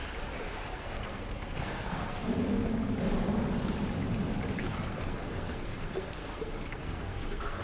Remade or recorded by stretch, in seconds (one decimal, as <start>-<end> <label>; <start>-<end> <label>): 0.0-0.7 recorded; 0.7-2.7 remade; 2.7-4.6 recorded; 4.6-7.6 remade